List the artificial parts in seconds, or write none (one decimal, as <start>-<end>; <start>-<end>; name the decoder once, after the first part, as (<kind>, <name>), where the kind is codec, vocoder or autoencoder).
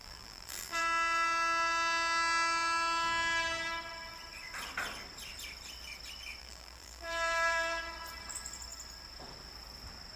0.0-0.8 (vocoder, BigVGAN v2); 6.4-7.8